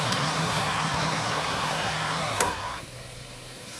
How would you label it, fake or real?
fake